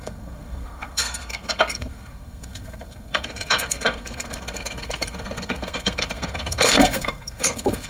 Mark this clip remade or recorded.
remade